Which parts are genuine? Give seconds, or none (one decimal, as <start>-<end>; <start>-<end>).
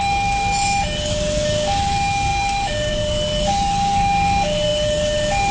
none